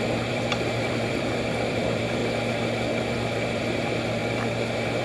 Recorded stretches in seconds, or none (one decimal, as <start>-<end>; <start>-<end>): 2.2-3.0; 4.2-5.0